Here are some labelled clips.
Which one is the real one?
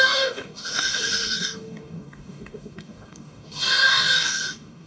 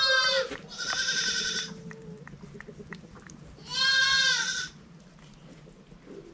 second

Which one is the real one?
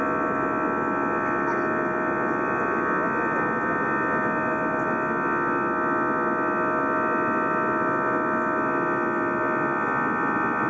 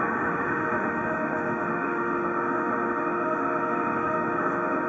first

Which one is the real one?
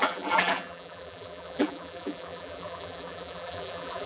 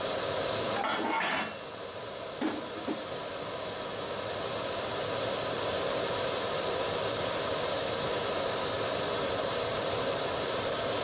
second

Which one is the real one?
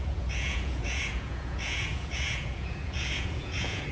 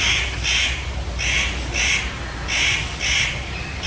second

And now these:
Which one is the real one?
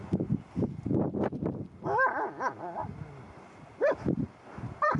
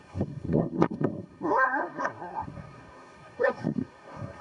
first